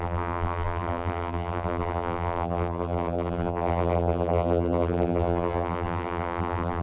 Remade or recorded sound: remade